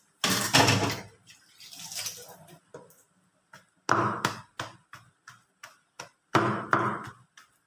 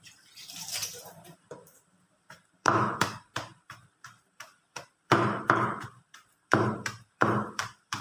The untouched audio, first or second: first